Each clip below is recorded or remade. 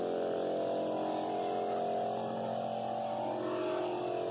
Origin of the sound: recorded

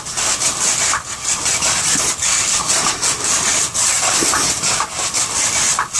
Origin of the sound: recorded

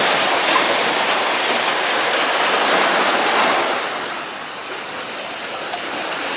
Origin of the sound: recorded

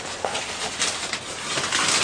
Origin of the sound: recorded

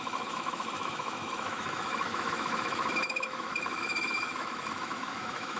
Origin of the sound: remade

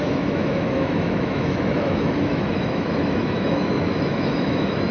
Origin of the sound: remade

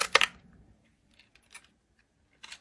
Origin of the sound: recorded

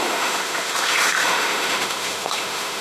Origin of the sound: remade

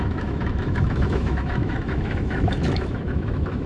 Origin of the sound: remade